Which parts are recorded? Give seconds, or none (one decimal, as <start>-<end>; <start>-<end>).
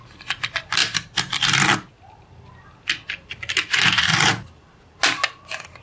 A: 0.0-5.8